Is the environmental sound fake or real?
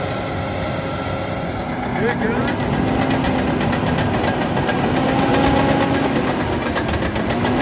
real